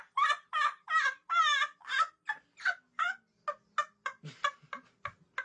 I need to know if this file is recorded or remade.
recorded